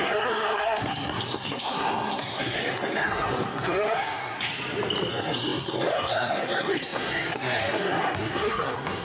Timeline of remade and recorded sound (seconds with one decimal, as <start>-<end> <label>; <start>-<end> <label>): 0.0-4.5 remade; 4.5-5.1 recorded; 5.1-9.0 remade